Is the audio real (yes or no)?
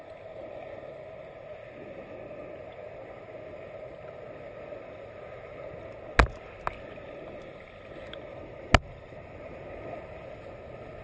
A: yes